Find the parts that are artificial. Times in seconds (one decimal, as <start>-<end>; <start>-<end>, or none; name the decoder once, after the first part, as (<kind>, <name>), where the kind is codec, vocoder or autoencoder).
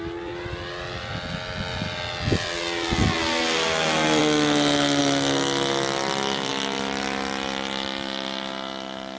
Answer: none